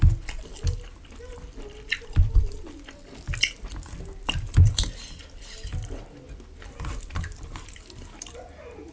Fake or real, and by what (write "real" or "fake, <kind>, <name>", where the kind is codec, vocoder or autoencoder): real